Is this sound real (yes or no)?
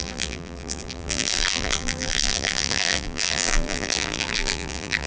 no